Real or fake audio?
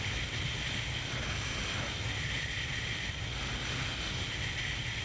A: real